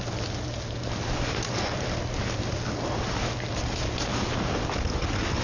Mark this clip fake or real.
fake